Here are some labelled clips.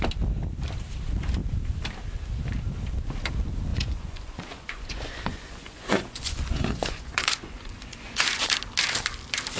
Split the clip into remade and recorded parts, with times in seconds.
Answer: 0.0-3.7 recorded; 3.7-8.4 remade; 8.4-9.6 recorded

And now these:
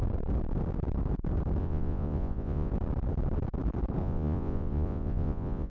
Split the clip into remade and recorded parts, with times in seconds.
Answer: 0.0-1.6 recorded; 1.6-2.7 remade; 2.7-4.0 recorded; 4.0-5.7 remade

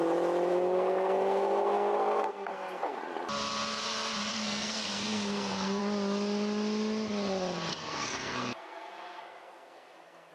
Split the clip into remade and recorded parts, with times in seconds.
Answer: 0.0-0.5 recorded; 0.5-3.0 remade; 3.0-4.3 recorded; 4.3-5.8 remade; 5.8-7.7 recorded; 7.7-10.3 remade